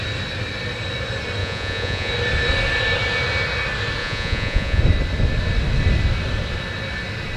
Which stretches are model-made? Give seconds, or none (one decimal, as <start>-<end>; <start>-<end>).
1.4-2.1; 4.0-4.8